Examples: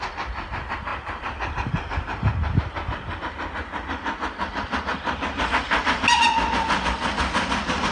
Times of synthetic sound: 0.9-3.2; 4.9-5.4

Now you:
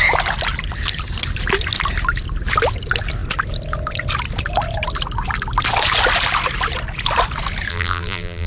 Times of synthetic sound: 7.7-8.5

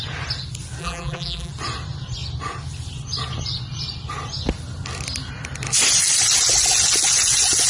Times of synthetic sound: 0.8-1.5

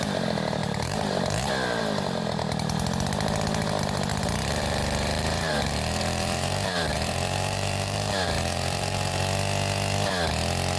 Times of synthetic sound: 0.6-1.5; 4.1-9.2

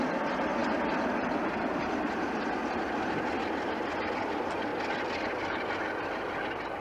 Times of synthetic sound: none

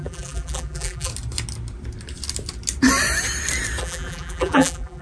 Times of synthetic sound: 0.0-1.1; 3.8-5.0

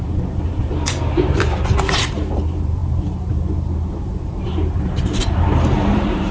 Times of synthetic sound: 0.0-6.3